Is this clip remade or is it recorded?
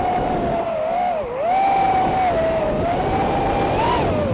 recorded